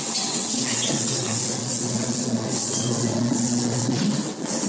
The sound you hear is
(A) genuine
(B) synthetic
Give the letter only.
B